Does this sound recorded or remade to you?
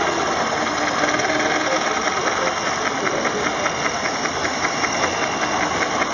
recorded